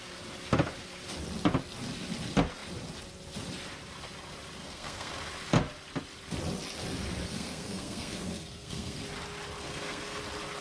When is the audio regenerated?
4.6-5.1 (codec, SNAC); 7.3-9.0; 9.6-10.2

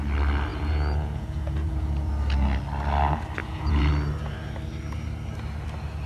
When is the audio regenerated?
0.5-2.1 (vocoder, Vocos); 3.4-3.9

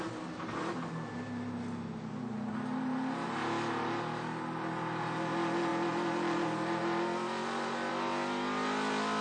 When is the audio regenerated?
none

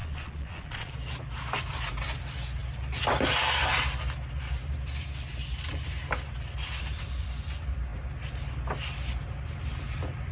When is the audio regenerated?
0.0-0.9 (vocoder, Vocos)

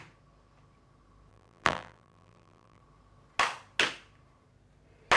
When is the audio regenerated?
1.3-2.8 (vocoder, BigVGAN v2)

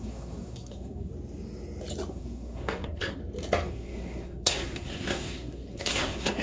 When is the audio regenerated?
0.0-1.1 (codec, SNAC); 2.1-3.2; 3.7-6.4

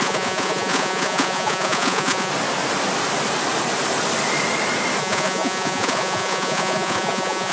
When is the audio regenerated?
0.0-2.3 (vocoder, Vocos); 5.0-7.5